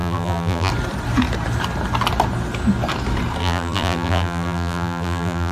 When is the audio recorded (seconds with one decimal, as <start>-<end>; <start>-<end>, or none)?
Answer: 0.7-3.4